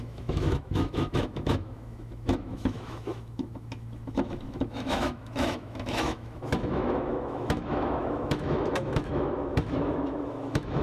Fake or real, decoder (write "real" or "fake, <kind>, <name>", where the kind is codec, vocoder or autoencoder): fake, autoencoder, DAC-VAE